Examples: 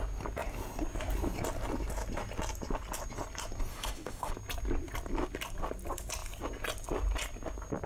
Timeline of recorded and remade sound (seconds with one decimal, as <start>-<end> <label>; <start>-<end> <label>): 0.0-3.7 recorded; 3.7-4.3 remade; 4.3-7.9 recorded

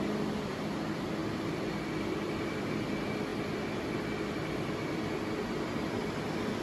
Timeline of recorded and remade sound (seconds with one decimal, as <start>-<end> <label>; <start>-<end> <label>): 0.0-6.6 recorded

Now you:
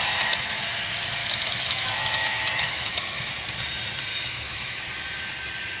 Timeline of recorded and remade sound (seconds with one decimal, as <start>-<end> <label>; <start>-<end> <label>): 0.0-1.2 recorded; 1.2-3.3 remade; 3.3-4.1 recorded; 4.1-4.8 remade; 4.8-5.8 recorded

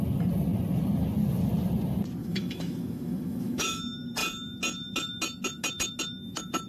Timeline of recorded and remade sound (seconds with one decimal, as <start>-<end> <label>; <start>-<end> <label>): 0.0-2.2 recorded; 2.2-3.8 remade; 3.8-6.7 recorded

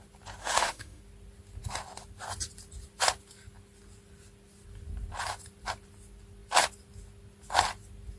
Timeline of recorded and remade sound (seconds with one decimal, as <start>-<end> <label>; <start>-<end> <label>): 0.0-0.4 recorded; 0.4-1.0 remade; 1.0-8.2 recorded

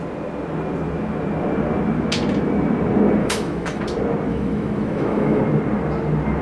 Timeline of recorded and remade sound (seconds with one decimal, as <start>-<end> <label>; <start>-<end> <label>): 0.0-3.2 recorded; 3.2-3.8 remade; 3.8-4.3 recorded; 4.3-5.4 remade; 5.4-6.4 recorded

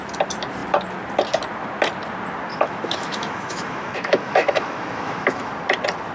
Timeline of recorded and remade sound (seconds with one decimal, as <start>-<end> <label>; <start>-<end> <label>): 0.0-2.5 recorded; 2.5-5.5 remade; 5.5-6.1 recorded